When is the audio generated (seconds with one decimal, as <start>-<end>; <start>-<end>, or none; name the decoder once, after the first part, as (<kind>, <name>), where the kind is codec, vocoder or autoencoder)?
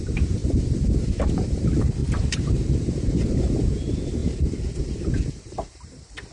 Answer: 0.0-6.3 (vocoder, BigVGAN v2)